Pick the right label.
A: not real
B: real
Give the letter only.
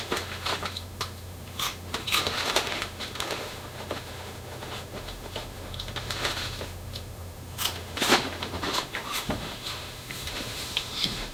A